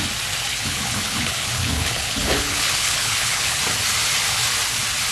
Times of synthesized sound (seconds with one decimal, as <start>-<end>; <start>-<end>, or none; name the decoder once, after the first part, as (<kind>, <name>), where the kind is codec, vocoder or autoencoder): 0.5-3.6 (codec, HILCodec)